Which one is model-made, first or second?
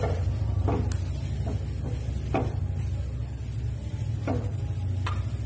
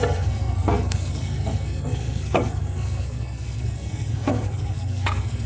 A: second